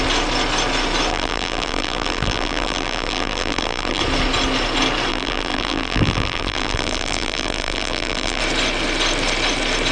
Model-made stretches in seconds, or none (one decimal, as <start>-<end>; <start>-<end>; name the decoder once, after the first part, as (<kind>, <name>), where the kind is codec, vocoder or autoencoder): 1.1-4.0 (vocoder, BigVGAN v2); 5.1-8.4